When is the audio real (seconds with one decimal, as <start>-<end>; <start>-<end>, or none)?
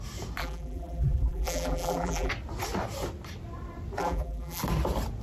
0.0-0.4; 2.3-4.0; 4.6-5.2